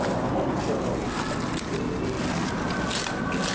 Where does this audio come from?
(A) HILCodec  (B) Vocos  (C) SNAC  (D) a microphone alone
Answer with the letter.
D